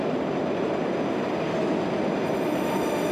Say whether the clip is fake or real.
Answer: real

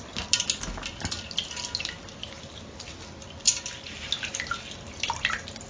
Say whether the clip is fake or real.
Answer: real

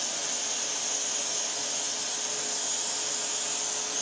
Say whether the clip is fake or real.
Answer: real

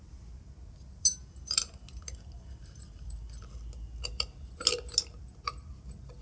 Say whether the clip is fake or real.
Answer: real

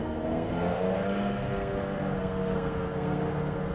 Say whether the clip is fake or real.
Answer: fake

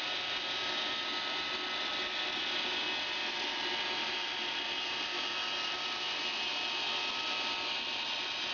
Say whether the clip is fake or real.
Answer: real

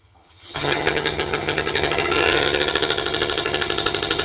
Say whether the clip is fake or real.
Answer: fake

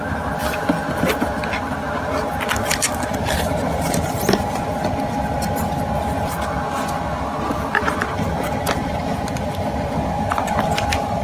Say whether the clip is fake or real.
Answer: real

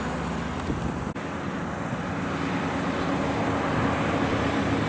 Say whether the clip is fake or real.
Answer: real